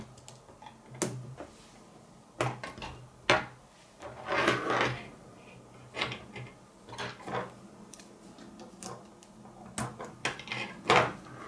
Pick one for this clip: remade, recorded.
recorded